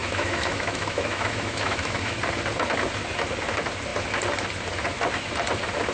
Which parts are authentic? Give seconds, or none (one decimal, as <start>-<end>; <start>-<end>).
2.2-5.9